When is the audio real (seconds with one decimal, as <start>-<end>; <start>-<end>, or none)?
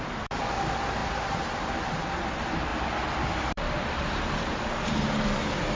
2.7-3.5